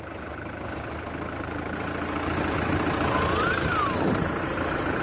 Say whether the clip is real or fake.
real